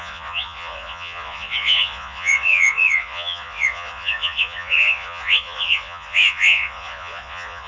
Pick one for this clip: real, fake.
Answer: fake